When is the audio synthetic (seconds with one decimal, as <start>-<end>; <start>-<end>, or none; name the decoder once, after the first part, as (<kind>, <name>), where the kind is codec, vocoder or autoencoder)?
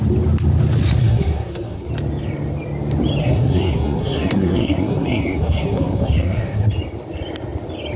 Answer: 1.0-1.9 (codec, SNAC); 3.2-6.7